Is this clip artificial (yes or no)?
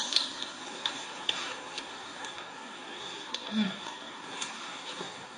yes